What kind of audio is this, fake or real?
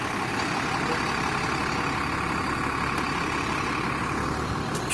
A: real